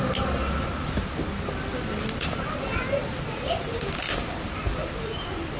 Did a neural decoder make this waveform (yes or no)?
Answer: no